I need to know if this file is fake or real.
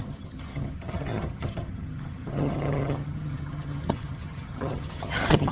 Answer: fake